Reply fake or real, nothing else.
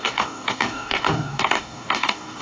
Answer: fake